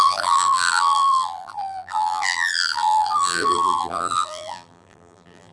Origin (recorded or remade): remade